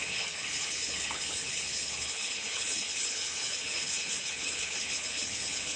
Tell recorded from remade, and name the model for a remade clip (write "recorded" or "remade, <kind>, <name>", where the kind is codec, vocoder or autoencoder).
remade, codec, HILCodec